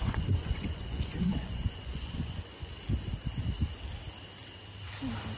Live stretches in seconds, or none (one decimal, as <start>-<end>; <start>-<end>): 2.7-5.4